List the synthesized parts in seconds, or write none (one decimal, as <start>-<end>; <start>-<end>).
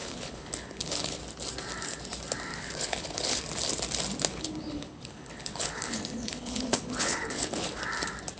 0.0-1.2; 2.5-3.4; 4.3-7.8